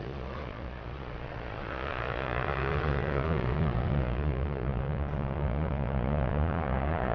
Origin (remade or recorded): remade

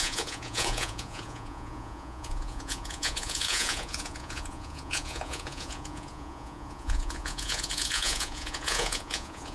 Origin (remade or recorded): remade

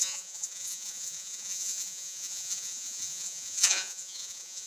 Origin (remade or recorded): remade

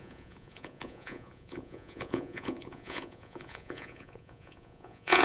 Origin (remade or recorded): remade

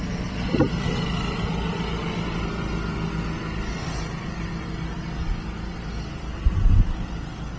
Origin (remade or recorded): recorded